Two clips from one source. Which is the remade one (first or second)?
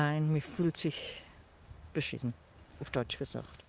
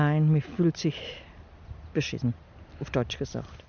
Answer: first